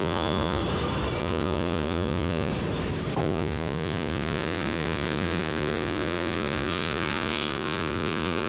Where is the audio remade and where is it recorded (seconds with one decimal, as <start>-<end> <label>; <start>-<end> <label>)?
0.0-0.6 remade; 0.6-1.2 recorded; 1.2-2.5 remade; 2.5-3.2 recorded; 3.2-8.5 remade